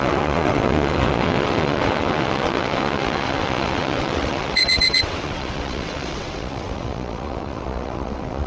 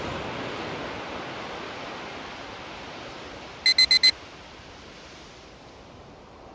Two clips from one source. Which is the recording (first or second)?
second